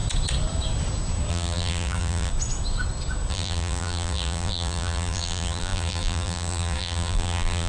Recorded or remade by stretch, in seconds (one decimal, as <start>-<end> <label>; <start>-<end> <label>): 0.0-1.3 recorded; 1.3-2.3 remade; 2.3-3.3 recorded; 3.3-7.7 remade